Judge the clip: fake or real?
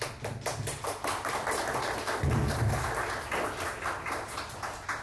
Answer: real